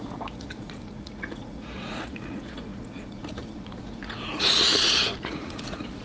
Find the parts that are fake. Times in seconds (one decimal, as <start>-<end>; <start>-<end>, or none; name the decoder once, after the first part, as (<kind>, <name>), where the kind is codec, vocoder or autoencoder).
0.0-6.0 (vocoder, Vocos)